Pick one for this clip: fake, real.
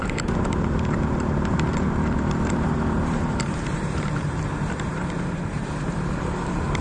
fake